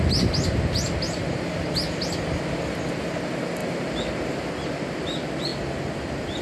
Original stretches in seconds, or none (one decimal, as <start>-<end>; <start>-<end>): 0.0-6.4